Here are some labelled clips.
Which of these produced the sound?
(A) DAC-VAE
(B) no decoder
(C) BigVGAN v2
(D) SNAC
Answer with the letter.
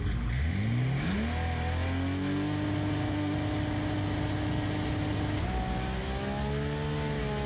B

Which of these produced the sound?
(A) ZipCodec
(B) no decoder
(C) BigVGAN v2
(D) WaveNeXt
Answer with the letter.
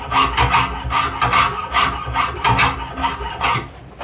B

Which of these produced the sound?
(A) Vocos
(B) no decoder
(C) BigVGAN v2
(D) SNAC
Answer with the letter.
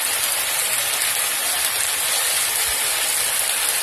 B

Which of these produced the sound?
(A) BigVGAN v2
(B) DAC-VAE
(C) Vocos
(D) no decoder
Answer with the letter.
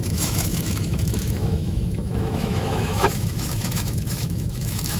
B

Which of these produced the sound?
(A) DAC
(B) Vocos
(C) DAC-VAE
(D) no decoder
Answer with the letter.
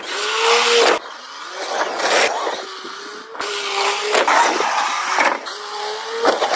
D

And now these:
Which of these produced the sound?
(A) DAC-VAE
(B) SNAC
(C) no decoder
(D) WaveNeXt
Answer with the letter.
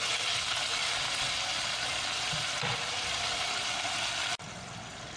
C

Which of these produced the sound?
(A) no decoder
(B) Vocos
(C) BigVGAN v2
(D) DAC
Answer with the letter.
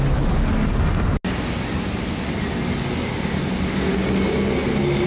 A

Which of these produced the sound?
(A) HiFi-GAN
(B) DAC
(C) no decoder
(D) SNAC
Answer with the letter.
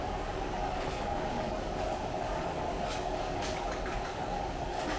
B